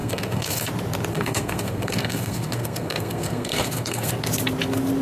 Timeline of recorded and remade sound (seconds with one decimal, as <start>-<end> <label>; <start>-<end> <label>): 0.0-0.7 remade; 0.7-1.1 recorded; 1.1-4.1 remade; 4.1-5.0 recorded